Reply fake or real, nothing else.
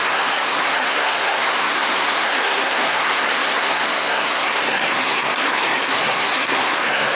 fake